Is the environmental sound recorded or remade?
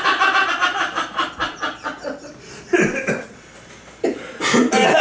recorded